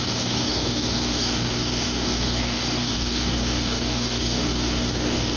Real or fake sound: fake